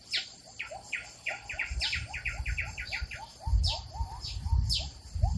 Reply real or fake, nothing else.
real